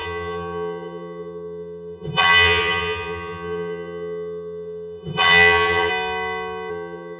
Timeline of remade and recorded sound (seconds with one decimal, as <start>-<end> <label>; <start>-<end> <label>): 0.0-5.9 remade; 5.9-6.7 recorded; 6.7-7.2 remade